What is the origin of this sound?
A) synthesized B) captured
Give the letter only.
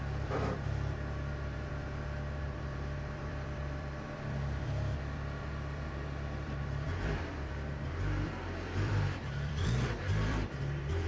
A